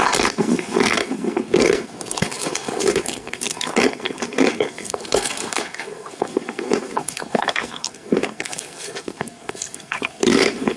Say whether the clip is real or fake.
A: fake